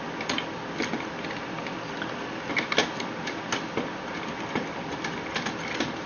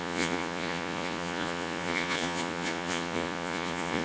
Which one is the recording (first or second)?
first